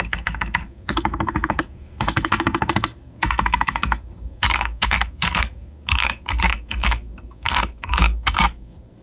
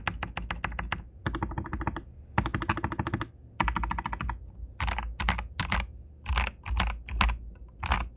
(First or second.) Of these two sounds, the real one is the second